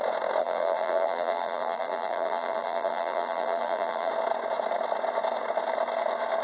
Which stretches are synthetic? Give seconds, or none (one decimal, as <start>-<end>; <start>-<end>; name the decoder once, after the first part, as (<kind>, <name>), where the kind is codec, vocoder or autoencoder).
0.4-4.1 (vocoder, BigVGAN v2)

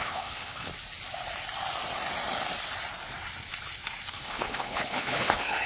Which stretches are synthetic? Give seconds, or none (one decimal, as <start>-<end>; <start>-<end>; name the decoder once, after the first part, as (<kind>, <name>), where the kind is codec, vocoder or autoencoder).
0.0-0.7 (codec, HILCodec); 4.1-5.7

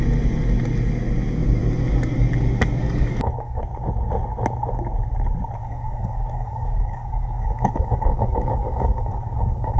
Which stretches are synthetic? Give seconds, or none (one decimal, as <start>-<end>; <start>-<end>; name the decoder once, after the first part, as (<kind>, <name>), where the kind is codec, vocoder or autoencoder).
2.8-3.6 (codec, DAC); 5.6-9.8